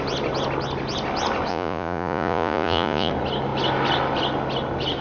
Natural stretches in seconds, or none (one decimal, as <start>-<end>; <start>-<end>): 0.0-1.5; 3.1-5.0